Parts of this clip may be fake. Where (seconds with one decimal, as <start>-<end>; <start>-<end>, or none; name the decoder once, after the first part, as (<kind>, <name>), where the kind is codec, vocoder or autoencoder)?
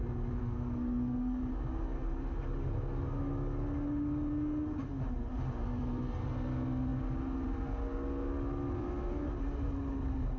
0.4-1.5 (codec, SNAC)